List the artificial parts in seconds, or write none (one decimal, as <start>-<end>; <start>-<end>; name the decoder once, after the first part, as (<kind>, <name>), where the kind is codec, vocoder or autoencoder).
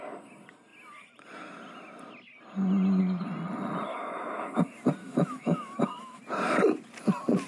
3.9-4.6 (autoencoder, DAC-VAE); 5.0-6.2